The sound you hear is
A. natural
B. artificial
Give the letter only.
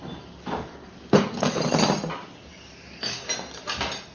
A